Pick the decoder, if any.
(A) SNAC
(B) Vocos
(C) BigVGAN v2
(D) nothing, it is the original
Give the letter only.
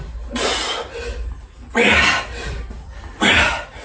D